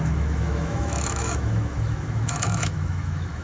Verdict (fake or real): fake